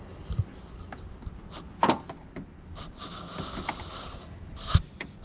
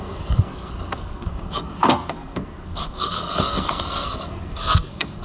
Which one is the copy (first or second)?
second